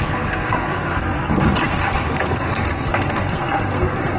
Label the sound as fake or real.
fake